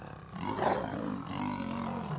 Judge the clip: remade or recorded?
recorded